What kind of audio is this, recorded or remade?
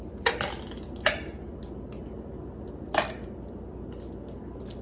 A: recorded